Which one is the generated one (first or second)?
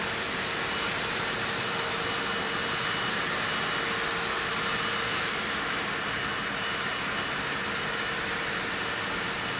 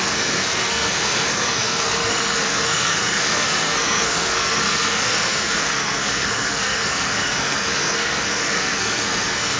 second